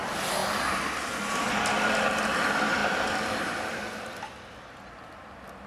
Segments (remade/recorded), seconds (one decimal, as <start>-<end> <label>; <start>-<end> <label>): 0.0-2.8 recorded; 2.8-4.9 remade; 4.9-5.7 recorded